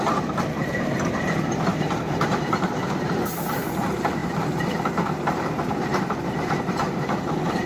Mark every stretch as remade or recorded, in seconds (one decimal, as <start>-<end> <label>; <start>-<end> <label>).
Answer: 0.0-7.7 remade